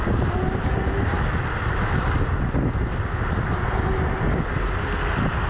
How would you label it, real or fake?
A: real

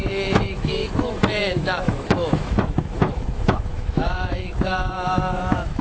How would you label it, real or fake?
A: fake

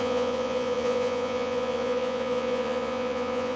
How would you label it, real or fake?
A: fake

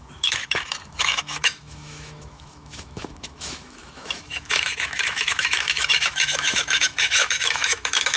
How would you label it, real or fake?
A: fake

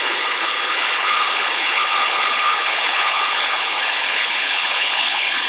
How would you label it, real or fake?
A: fake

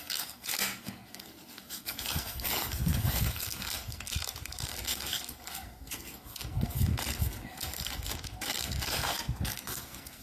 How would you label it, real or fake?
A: fake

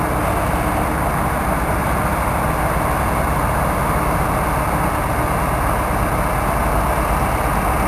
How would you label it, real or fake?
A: real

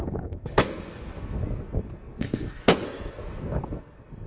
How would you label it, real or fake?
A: fake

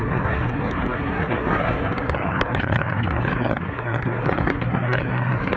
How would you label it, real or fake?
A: fake